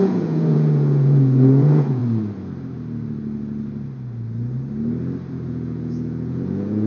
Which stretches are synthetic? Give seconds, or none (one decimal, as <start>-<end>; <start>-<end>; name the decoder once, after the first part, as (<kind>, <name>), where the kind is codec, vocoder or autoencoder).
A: 0.0-2.0 (vocoder, Vocos); 5.3-6.9